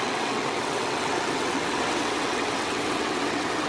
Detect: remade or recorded remade